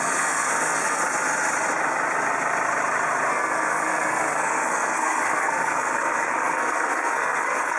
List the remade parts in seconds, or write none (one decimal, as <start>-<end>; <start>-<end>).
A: 0.0-1.0; 3.3-7.8